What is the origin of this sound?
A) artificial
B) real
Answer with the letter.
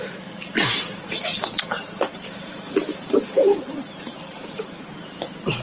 A